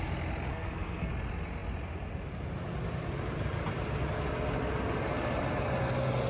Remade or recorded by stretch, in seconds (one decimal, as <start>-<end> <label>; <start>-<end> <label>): 0.0-0.5 recorded; 0.5-1.1 remade; 1.1-6.3 recorded

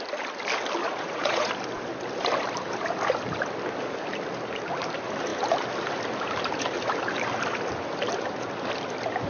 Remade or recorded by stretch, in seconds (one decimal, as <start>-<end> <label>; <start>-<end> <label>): 0.0-0.8 recorded; 0.8-1.5 remade; 1.5-9.3 recorded

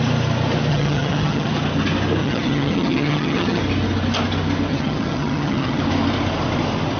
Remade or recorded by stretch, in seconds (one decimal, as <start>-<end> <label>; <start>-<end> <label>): 0.0-0.7 recorded; 0.7-1.5 remade; 1.5-2.2 recorded; 2.2-3.6 remade; 3.6-4.7 recorded; 4.7-5.8 remade; 5.8-7.0 recorded